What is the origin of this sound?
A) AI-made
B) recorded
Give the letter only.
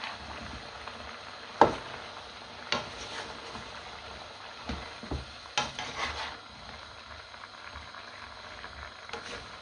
B